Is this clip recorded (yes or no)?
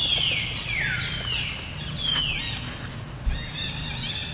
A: yes